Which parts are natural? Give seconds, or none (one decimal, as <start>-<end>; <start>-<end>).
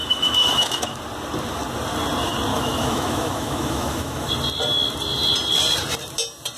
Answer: 1.0-2.5; 4.3-6.6